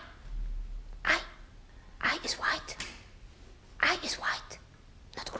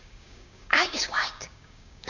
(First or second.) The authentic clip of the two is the first